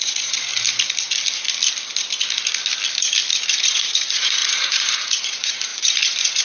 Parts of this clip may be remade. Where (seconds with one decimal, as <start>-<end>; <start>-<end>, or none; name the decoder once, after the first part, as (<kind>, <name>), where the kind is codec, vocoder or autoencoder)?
0.0-0.5 (vocoder, Vocos); 3.5-6.4